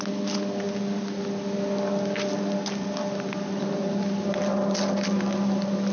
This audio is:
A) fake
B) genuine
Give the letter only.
B